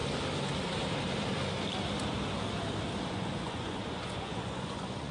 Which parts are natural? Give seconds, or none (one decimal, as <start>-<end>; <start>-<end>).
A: 0.0-3.1